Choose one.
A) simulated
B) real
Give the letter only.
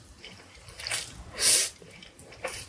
A